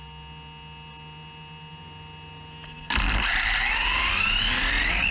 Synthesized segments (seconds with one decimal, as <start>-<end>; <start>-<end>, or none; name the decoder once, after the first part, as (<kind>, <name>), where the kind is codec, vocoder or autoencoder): none